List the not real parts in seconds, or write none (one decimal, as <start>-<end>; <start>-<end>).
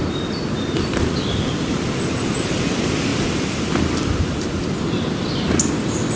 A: 0.0-1.0; 3.1-4.9